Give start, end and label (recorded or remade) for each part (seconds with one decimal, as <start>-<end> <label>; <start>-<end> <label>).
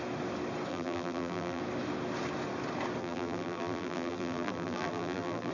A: 0.0-0.7 recorded; 0.7-1.6 remade; 1.6-3.0 recorded; 3.0-5.5 remade